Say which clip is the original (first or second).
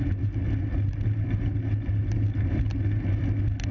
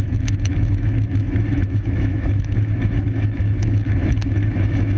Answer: first